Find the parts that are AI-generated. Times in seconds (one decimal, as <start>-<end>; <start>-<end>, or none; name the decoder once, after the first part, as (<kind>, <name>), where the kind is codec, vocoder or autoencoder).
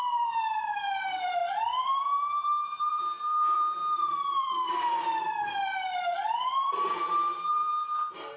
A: 0.0-1.4 (vocoder, BigVGAN v2); 2.9-3.8; 4.4-8.4